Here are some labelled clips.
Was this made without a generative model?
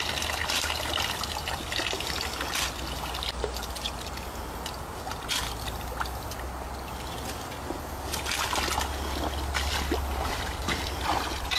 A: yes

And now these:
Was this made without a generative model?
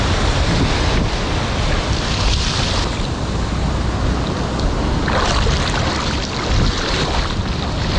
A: yes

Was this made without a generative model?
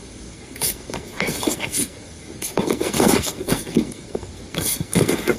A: no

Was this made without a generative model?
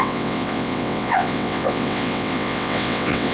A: no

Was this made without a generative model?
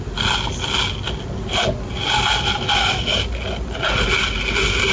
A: yes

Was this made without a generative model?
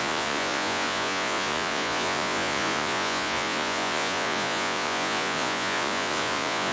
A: no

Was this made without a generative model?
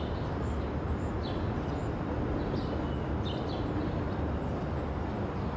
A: yes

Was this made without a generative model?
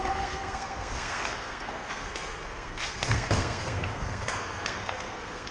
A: no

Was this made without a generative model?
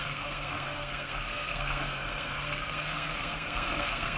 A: no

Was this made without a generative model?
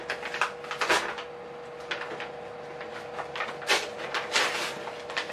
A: yes